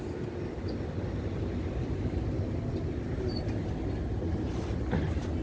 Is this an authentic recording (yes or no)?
yes